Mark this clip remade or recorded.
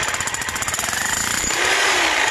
recorded